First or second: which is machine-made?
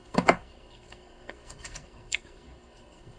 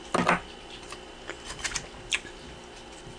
first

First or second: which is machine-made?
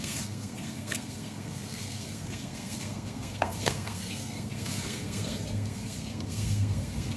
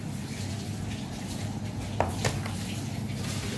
first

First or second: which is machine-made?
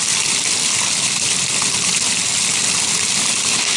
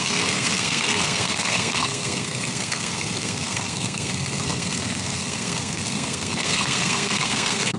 second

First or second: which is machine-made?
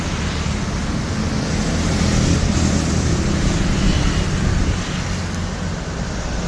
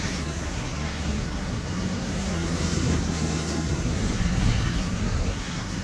second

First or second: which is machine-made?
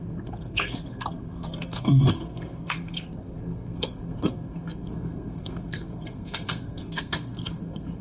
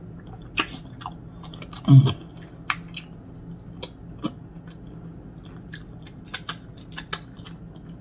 first